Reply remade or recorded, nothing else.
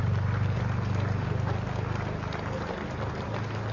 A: recorded